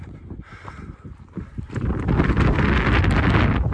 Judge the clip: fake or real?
real